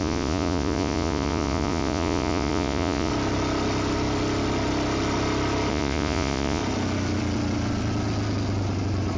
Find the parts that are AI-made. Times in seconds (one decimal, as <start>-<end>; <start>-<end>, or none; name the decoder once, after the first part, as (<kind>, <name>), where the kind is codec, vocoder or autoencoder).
0.0-3.1 (vocoder, Vocos); 5.7-6.6